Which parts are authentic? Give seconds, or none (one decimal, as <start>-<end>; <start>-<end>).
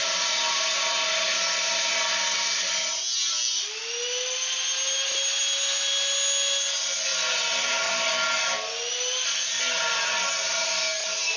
0.0-11.4